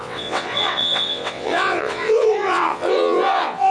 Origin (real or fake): fake